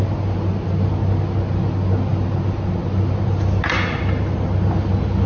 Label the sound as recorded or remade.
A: recorded